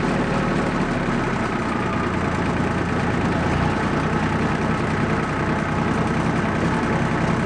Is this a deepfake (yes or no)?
no